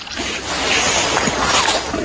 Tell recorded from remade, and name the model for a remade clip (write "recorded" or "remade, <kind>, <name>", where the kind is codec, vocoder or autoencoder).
recorded